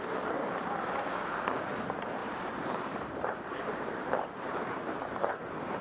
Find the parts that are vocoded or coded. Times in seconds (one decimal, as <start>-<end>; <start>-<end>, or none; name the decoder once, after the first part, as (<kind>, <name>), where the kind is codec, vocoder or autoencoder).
2.2-5.8 (vocoder, BigVGAN v2)